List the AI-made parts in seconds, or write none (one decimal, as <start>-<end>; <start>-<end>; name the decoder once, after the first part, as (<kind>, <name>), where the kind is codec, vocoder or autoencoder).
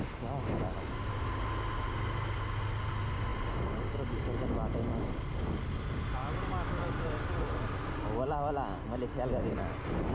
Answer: 6.2-6.8 (autoencoder, DAC-VAE)